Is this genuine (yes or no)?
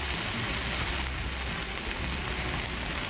yes